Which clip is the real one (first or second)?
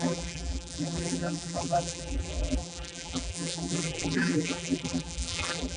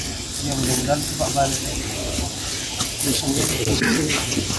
second